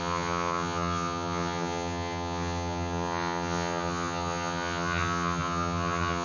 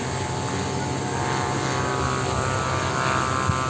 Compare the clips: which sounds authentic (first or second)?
second